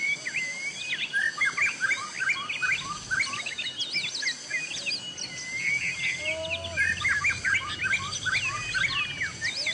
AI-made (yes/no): no